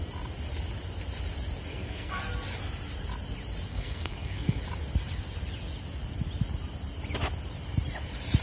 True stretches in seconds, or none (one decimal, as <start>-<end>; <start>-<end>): 0.0-1.7; 2.2-3.7; 4.6-8.4